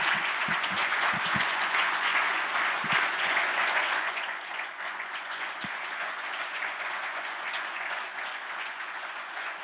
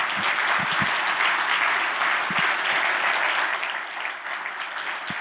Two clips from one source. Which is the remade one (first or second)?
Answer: first